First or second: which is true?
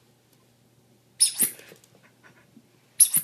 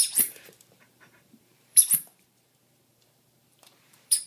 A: first